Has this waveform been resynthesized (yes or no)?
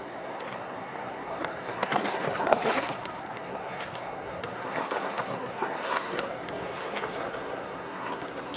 yes